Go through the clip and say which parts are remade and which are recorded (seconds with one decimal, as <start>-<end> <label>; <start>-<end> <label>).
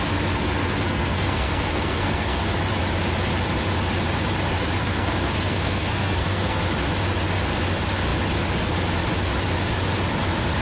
0.0-0.6 recorded; 0.6-2.4 remade; 2.4-4.8 recorded; 4.8-6.6 remade; 6.6-10.6 recorded